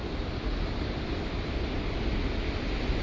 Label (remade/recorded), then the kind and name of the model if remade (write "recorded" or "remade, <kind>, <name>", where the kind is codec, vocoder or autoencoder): recorded